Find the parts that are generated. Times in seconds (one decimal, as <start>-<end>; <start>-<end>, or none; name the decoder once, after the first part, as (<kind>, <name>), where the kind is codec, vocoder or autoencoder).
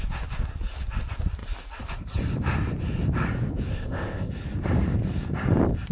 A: 3.7-4.3 (codec, ZipCodec)